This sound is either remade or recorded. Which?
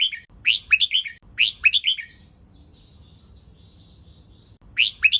recorded